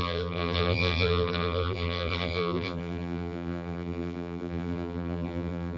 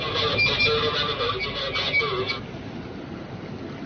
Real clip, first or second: second